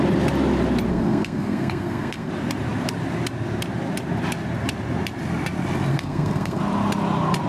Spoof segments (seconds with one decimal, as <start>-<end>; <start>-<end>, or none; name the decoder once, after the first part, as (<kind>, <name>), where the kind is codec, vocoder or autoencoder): 0.9-2.3 (codec, SNAC); 5.9-6.6